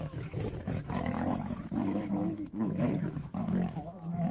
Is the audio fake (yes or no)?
yes